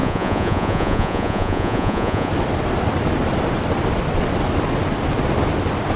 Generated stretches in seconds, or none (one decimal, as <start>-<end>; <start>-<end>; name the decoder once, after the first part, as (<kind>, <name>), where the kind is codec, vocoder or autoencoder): 0.0-2.3 (vocoder, Vocos)